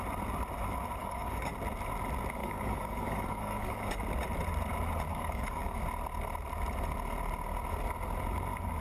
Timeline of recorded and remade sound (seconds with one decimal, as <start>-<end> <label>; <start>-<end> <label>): 0.0-1.0 recorded; 1.0-1.5 remade; 1.5-2.4 recorded; 2.4-4.0 remade; 4.0-5.1 recorded; 5.1-5.8 remade; 5.8-8.8 recorded